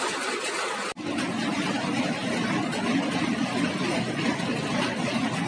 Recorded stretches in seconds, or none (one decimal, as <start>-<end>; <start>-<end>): 0.0-5.5